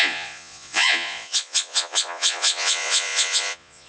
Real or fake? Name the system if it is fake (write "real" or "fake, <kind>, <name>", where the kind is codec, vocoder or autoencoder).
fake, vocoder, Vocos